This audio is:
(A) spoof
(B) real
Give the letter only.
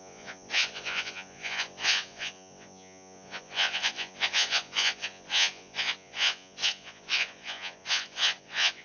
A